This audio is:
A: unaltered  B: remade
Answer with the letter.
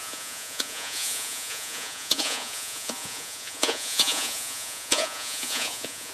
B